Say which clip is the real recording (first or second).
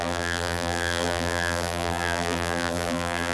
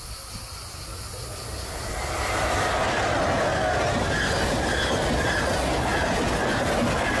second